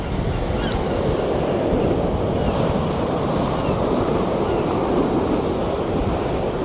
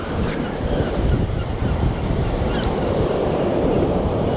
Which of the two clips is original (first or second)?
first